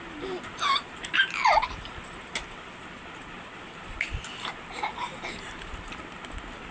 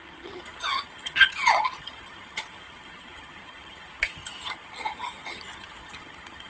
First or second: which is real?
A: first